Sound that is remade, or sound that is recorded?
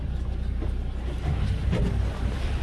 recorded